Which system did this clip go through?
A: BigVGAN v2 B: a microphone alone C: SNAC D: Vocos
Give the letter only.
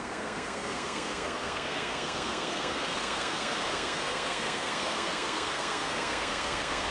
C